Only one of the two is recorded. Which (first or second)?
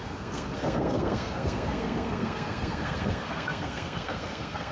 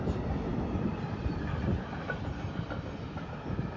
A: second